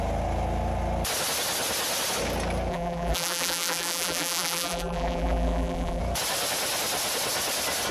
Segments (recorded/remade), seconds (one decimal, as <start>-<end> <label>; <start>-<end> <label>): 0.0-2.7 recorded; 2.7-6.0 remade; 6.0-7.9 recorded